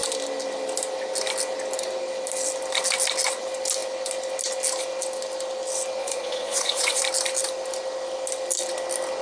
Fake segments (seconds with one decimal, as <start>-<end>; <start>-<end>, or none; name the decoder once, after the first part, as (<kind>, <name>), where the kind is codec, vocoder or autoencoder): 6.0-7.0 (vocoder, Vocos)